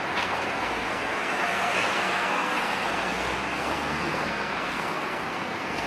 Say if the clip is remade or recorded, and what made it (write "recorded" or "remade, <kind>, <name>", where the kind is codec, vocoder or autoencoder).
remade, codec, SNAC